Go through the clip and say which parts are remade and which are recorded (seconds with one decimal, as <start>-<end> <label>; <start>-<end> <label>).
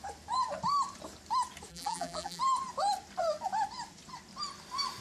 0.0-1.7 recorded; 1.7-2.4 remade; 2.4-5.0 recorded